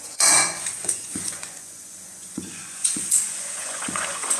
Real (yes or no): no